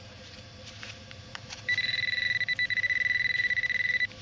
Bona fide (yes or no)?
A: no